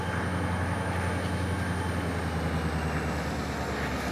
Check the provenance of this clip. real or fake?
real